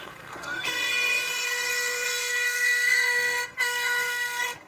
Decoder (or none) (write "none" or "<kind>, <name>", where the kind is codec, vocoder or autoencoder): codec, SNAC